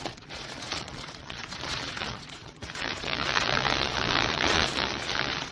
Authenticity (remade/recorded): remade